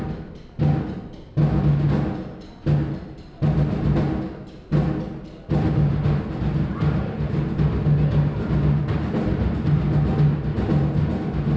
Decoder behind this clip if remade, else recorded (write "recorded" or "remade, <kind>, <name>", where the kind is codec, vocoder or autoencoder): recorded